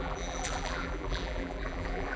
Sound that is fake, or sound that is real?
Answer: fake